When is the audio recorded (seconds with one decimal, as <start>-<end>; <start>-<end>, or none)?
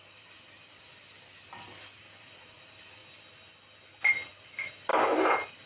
3.0-4.3; 4.9-5.7